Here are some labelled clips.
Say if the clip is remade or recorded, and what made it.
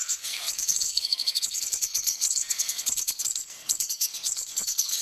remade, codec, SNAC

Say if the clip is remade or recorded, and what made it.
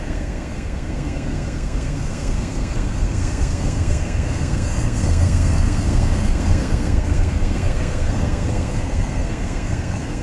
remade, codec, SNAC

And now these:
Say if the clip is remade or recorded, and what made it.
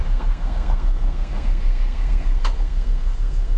remade, codec, SNAC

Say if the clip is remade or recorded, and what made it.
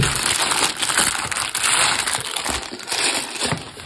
recorded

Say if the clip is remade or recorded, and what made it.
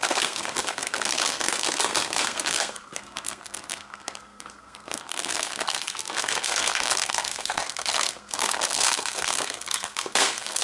remade, codec, SNAC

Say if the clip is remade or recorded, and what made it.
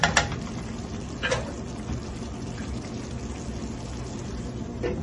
recorded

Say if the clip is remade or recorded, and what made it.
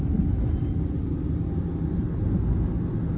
recorded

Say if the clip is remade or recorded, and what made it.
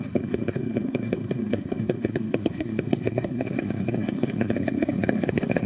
remade, codec, SNAC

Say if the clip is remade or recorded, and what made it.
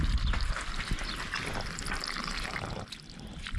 recorded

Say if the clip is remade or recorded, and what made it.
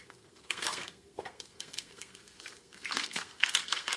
remade, codec, SNAC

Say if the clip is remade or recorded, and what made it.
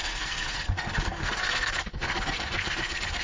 remade, codec, SNAC